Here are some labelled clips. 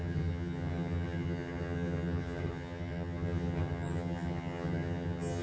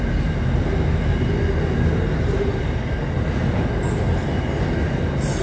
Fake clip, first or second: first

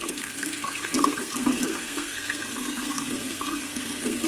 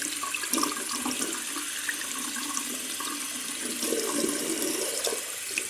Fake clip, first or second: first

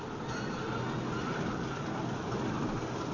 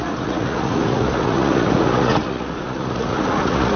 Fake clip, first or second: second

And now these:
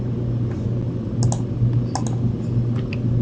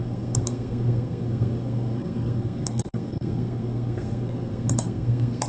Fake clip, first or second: second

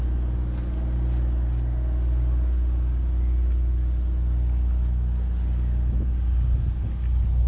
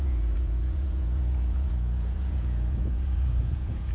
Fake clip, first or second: second